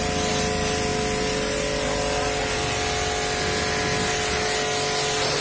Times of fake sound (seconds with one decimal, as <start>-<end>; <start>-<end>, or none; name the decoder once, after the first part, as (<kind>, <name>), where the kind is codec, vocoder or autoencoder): none